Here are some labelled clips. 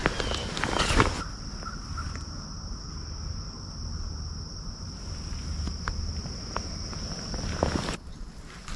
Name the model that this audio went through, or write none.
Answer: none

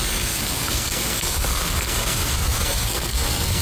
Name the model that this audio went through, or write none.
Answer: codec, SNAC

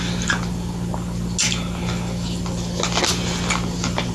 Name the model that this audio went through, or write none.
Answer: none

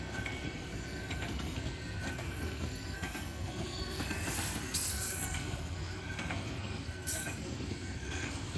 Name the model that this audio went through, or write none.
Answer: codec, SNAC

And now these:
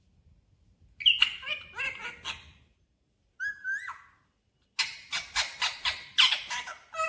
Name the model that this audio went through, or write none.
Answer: none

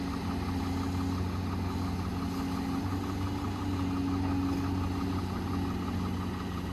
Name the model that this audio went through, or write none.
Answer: none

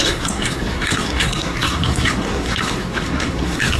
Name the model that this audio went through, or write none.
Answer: codec, SNAC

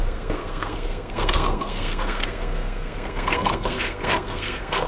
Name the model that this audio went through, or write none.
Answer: codec, SNAC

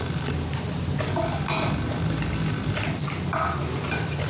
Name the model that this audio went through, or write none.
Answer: none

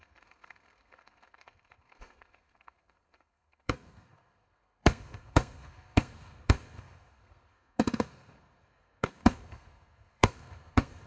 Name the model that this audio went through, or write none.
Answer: codec, SNAC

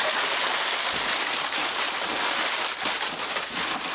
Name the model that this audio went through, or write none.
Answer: none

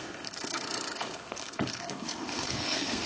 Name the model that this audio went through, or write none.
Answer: codec, SNAC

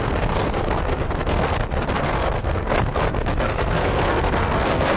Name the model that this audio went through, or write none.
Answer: codec, SNAC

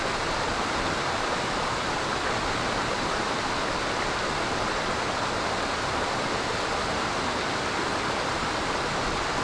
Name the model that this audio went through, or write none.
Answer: none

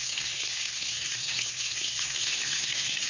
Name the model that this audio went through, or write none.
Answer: codec, SNAC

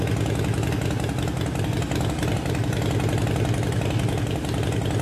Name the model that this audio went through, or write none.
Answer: none